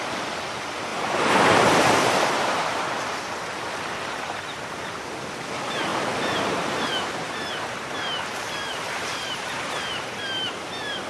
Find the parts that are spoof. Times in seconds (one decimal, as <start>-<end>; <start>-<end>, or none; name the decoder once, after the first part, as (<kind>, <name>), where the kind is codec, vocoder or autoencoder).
0.9-3.2 (vocoder, BigVGAN v2); 5.9-11.1